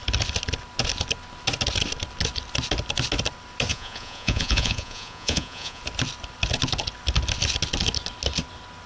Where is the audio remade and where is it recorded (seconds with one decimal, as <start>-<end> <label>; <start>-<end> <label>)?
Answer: 0.0-3.7 recorded; 3.7-5.8 remade; 5.8-8.9 recorded